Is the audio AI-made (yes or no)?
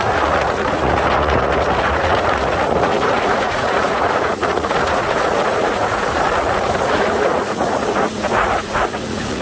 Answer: yes